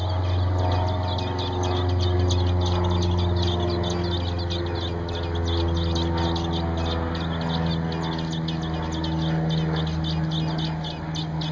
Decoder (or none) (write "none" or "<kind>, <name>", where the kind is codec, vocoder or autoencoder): none